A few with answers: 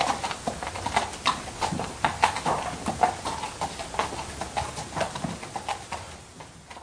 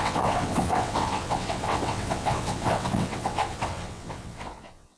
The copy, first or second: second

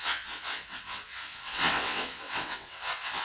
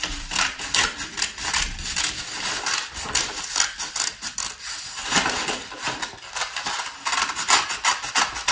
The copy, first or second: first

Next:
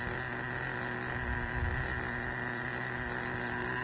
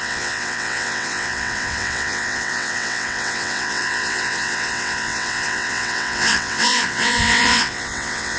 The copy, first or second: second